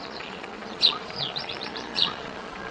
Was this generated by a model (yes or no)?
yes